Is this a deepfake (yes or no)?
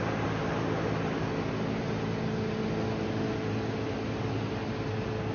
no